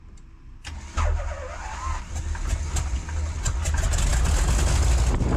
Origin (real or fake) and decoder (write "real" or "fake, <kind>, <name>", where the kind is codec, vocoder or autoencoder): real